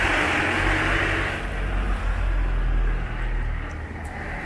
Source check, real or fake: real